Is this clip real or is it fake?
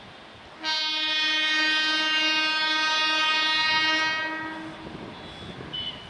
real